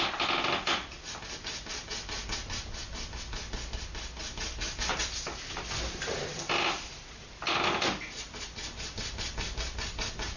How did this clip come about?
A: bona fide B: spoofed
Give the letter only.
A